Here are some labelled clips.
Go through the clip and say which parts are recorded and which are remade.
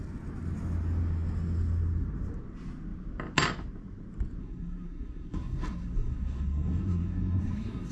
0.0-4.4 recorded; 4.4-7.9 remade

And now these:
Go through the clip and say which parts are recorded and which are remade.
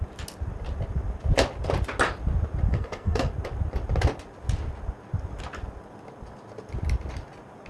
0.0-2.7 recorded; 2.7-3.3 remade; 3.3-7.7 recorded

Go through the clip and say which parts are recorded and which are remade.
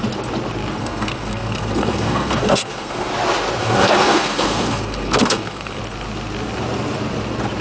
0.0-0.8 recorded; 0.8-3.1 remade; 3.1-3.6 recorded; 3.6-5.8 remade; 5.8-7.6 recorded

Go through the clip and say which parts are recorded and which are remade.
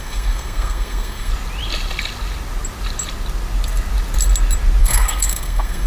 0.0-1.3 remade; 1.3-4.8 recorded; 4.8-5.9 remade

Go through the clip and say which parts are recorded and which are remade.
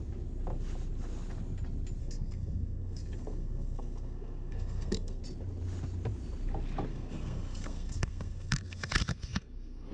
0.0-2.0 recorded; 2.0-5.2 remade; 5.2-6.9 recorded; 6.9-9.9 remade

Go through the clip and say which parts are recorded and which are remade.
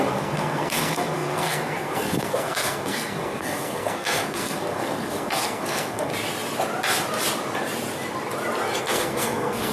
0.0-6.1 remade; 6.1-8.8 recorded; 8.8-9.7 remade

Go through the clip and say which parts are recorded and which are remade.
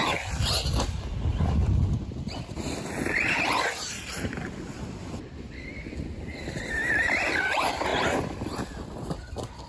0.0-9.7 recorded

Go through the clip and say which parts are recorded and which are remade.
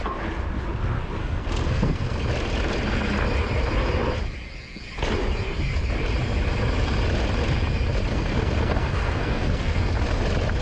0.0-1.2 recorded; 1.2-2.2 remade; 2.2-8.1 recorded; 8.1-9.9 remade; 9.9-10.6 recorded